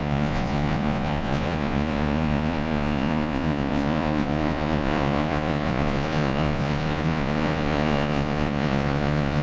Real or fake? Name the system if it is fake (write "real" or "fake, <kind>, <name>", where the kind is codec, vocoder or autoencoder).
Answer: fake, vocoder, Vocos